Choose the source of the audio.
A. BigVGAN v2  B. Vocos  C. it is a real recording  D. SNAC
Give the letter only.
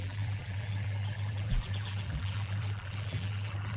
A